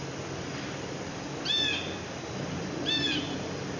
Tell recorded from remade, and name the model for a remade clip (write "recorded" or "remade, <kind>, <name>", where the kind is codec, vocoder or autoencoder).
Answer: recorded